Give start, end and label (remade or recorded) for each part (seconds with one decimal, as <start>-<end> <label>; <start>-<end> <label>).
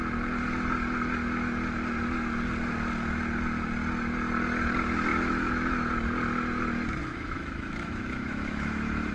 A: 0.0-5.1 recorded; 5.1-5.9 remade; 5.9-7.0 recorded; 7.0-9.1 remade